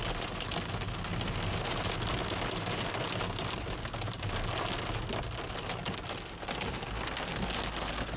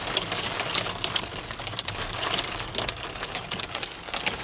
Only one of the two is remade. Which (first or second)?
second